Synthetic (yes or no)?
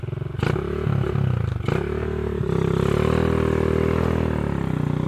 no